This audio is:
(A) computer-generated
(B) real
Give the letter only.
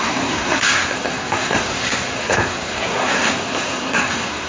A